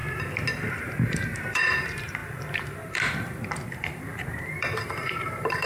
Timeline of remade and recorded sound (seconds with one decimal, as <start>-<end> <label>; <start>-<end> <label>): 0.0-0.7 recorded; 0.7-5.7 remade